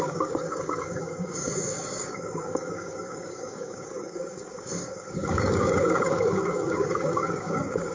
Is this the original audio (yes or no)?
no